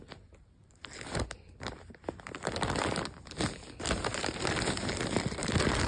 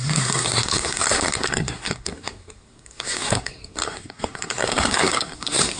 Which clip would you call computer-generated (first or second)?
second